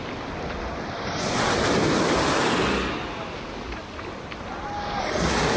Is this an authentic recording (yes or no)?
yes